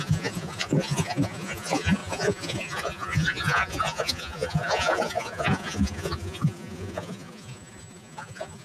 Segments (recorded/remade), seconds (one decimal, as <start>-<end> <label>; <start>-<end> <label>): 0.0-8.6 remade